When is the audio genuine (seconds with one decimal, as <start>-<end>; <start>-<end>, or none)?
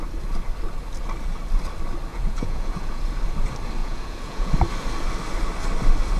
0.0-2.1; 3.0-3.8; 4.5-6.2